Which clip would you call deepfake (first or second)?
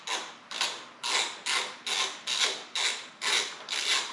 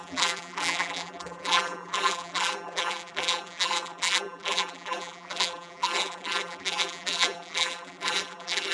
second